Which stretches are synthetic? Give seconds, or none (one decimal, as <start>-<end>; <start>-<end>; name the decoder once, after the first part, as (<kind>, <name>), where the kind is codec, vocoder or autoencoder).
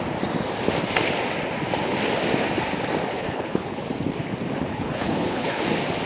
3.1-3.8 (codec, HILCodec); 4.7-5.6